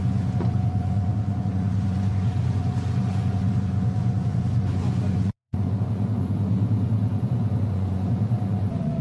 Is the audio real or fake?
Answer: fake